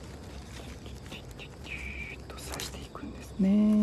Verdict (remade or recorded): recorded